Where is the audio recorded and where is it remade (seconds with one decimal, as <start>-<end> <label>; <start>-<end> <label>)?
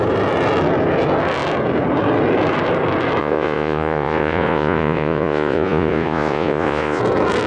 0.0-3.2 recorded; 3.2-7.0 remade; 7.0-7.5 recorded